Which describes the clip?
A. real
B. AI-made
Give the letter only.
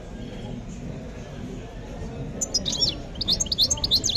A